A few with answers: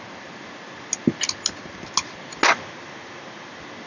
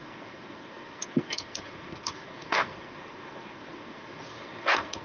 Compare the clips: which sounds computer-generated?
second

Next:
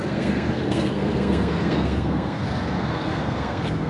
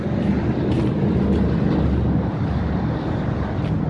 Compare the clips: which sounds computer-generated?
first